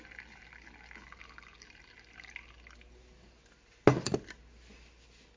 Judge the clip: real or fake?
real